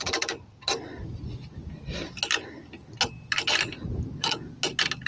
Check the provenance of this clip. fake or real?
real